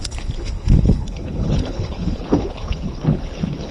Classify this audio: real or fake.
fake